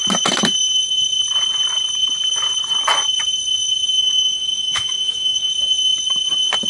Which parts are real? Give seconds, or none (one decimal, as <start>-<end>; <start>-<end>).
0.0-4.0; 5.5-6.7